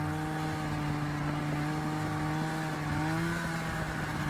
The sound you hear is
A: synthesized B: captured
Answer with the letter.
B